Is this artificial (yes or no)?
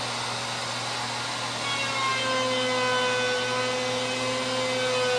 no